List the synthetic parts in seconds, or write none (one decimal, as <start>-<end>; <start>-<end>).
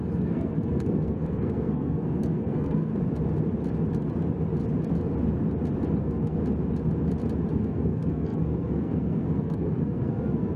0.0-2.9; 6.0-6.4; 7.5-10.6